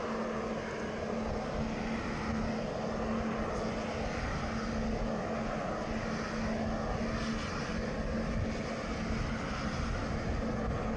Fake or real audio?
real